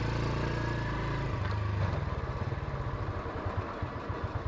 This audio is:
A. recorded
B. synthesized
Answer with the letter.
A